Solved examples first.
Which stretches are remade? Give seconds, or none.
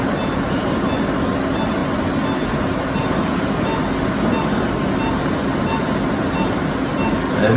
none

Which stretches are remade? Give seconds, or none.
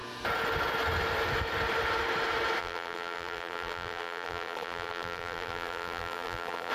2.6-6.7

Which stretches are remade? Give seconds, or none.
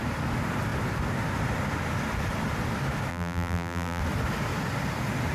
3.1-4.0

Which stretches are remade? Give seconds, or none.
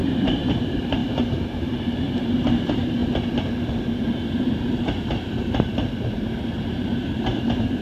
0.0-3.0; 4.5-7.8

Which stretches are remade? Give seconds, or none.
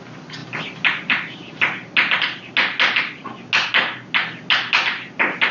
none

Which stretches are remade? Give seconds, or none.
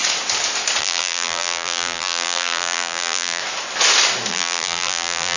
0.8-3.4; 4.3-5.4